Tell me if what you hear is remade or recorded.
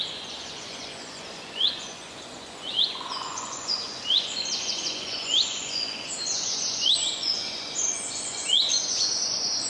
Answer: remade